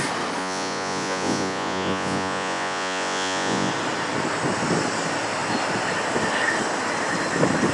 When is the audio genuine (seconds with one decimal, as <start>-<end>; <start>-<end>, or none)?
0.0-0.4; 3.7-7.7